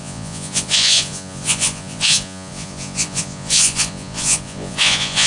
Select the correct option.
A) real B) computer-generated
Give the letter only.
B